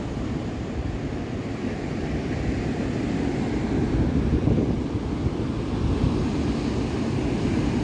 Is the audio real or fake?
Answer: real